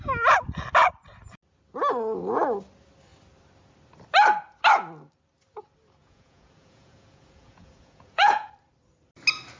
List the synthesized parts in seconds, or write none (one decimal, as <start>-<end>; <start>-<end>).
6.0-8.5